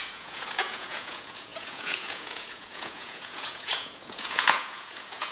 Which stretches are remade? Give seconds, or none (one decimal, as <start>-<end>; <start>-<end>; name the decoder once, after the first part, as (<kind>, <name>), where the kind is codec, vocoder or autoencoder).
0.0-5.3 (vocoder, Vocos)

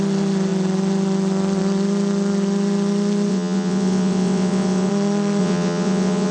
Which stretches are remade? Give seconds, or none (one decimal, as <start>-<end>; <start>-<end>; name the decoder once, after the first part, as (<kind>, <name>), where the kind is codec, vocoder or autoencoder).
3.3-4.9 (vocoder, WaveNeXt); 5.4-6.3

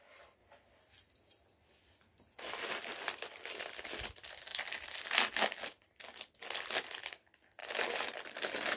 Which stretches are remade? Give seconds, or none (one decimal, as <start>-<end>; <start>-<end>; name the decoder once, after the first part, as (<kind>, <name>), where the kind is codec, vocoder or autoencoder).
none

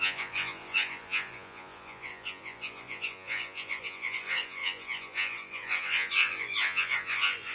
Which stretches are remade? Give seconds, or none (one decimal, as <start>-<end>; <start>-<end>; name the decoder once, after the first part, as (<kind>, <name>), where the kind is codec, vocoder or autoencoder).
0.0-7.5 (vocoder, Vocos)